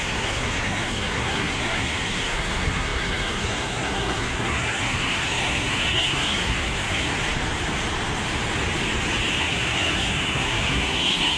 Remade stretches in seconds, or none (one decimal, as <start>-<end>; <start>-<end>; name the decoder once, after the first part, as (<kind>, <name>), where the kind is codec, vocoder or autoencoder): 0.0-7.1 (codec, SNAC); 9.4-11.4